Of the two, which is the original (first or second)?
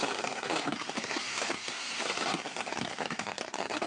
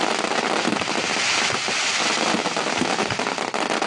second